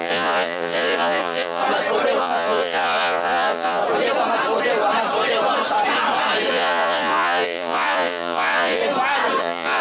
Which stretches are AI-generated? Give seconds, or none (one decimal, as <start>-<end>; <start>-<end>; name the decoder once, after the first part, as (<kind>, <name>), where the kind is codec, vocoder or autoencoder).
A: 0.0-1.6 (vocoder, Vocos); 2.2-3.8; 6.5-8.8; 9.4-9.8